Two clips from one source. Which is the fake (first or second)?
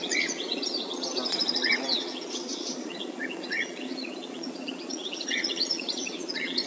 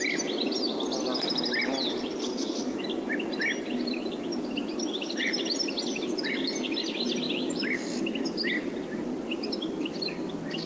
first